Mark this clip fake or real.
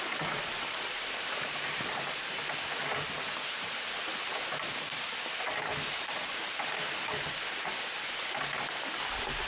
real